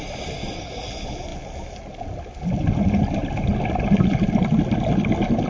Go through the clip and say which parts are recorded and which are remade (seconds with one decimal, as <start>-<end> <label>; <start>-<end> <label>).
0.0-5.5 recorded